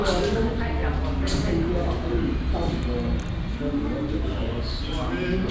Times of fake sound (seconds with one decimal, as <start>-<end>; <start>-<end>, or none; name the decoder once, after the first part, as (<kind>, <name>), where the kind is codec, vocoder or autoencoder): none